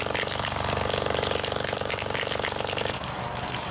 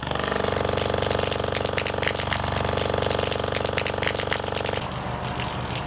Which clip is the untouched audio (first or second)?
second